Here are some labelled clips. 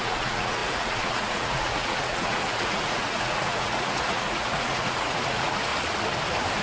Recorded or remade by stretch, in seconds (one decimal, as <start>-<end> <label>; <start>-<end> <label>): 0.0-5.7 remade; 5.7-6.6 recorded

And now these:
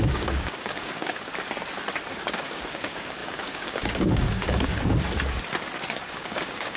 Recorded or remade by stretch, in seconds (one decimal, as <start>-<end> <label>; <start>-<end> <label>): 0.0-1.3 remade; 1.3-2.1 recorded; 2.1-4.7 remade; 4.7-6.0 recorded; 6.0-6.8 remade

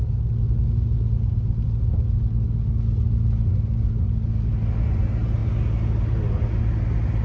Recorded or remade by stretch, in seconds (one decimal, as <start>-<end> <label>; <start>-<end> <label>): 0.0-7.2 recorded

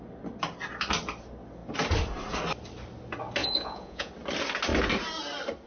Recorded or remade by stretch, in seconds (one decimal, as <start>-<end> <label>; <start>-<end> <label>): 0.0-3.4 recorded; 3.4-4.1 remade; 4.1-5.7 recorded